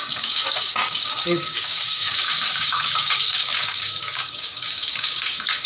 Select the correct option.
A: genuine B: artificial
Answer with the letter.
B